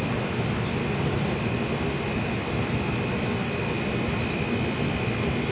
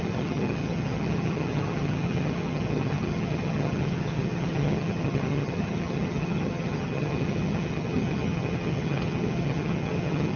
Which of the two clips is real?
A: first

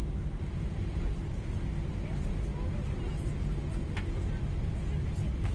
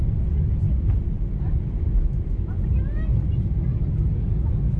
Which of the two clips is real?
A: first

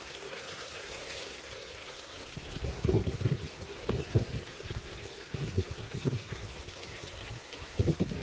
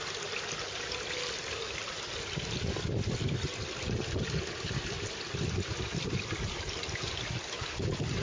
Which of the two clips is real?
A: second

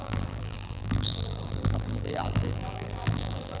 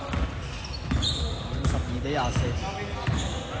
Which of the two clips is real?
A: second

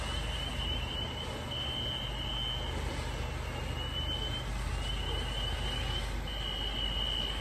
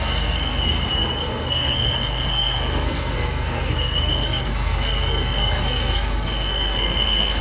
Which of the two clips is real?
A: first